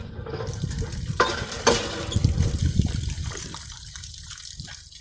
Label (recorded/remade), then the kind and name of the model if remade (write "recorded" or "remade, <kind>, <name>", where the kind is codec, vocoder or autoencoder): remade, vocoder, BigVGAN v2